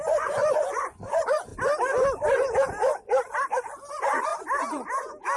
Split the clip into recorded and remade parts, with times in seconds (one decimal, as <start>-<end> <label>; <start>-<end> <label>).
0.0-1.5 remade; 1.5-3.9 recorded; 3.9-4.3 remade; 4.3-5.4 recorded